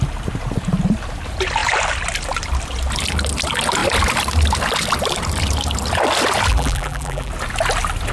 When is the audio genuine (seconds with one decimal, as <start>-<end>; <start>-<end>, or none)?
0.0-6.5; 7.3-8.1

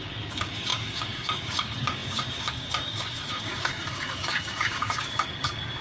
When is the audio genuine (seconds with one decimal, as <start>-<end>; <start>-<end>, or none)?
none

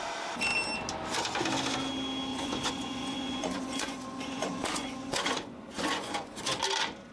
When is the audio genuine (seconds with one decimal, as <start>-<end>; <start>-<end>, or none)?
0.0-2.3; 6.6-7.1

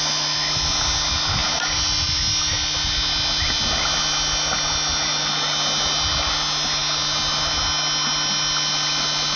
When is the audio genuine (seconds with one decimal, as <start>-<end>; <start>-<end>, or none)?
0.0-9.4

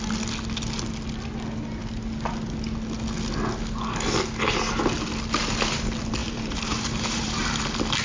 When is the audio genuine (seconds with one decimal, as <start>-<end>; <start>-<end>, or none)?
0.0-6.2; 7.6-8.0

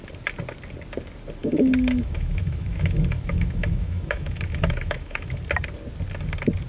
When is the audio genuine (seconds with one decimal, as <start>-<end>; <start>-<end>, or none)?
0.0-1.4; 5.4-6.7

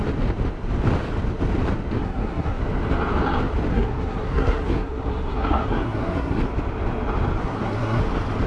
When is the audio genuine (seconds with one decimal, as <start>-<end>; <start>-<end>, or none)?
0.0-2.0; 2.6-3.7; 6.4-7.4; 8.0-8.5

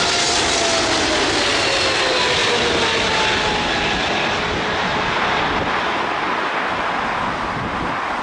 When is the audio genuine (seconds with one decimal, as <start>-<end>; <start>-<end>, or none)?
0.0-8.2